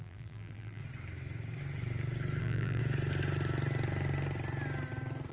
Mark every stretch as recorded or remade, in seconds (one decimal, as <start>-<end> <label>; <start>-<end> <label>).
0.0-0.8 remade; 0.8-2.4 recorded; 2.4-2.8 remade; 2.8-5.3 recorded